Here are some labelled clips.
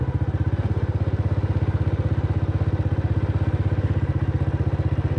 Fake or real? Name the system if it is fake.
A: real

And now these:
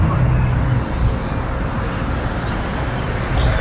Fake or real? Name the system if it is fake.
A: real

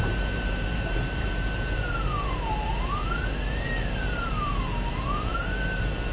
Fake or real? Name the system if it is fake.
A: fake, vocoder, BigVGAN v2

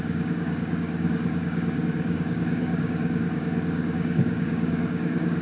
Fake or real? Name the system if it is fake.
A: fake, codec, DAC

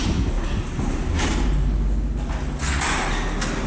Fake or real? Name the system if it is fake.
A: real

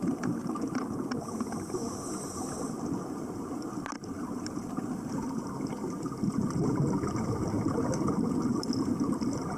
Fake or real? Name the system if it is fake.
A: real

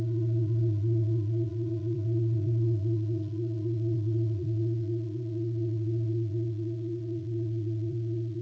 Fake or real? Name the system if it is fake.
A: fake, vocoder, Vocos